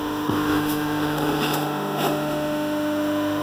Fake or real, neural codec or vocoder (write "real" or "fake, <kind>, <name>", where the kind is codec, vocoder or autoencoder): fake, autoencoder, DAC-VAE